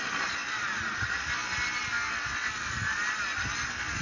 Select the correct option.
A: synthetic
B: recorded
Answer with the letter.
B